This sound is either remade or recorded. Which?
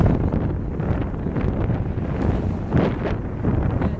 recorded